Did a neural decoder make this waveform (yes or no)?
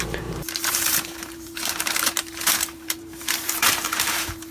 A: yes